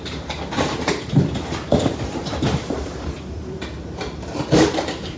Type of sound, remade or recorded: remade